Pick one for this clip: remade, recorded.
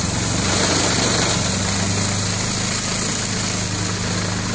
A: recorded